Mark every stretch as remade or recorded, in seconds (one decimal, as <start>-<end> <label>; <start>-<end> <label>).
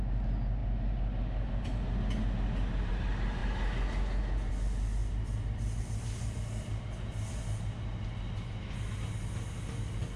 0.0-10.2 recorded